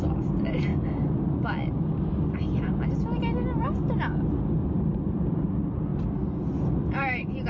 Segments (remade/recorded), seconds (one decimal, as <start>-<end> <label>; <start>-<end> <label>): 0.0-0.7 remade; 0.7-4.9 recorded; 4.9-5.9 remade; 5.9-6.7 recorded; 6.7-7.5 remade